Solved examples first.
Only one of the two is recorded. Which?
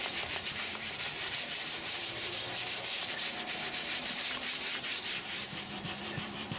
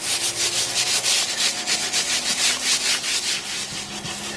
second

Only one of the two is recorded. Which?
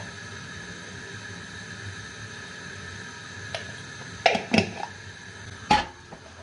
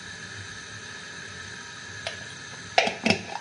first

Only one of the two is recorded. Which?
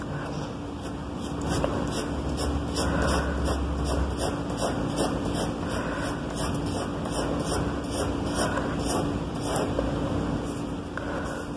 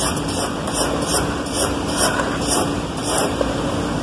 first